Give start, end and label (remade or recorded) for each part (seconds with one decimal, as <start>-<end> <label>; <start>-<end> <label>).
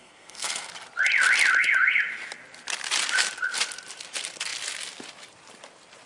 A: 0.0-0.7 remade; 0.7-6.1 recorded